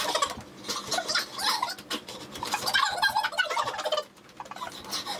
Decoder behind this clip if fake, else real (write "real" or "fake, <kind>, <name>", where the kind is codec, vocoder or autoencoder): real